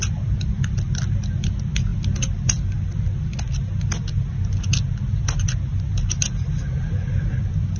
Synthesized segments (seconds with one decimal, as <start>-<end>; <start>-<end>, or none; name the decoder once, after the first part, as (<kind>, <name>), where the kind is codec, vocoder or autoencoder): none